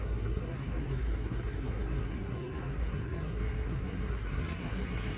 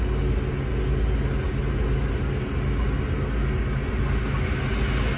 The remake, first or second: first